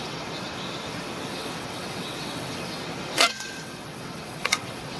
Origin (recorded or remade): remade